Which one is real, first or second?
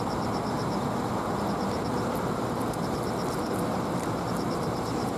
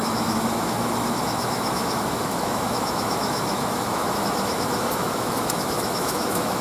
first